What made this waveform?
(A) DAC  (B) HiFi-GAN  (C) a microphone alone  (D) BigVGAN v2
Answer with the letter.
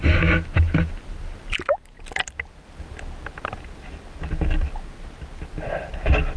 C